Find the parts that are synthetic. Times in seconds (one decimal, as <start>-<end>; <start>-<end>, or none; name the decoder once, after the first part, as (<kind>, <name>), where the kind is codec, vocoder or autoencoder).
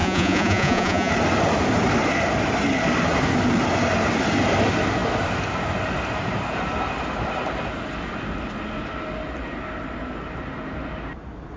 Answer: 0.0-1.1 (vocoder, Vocos)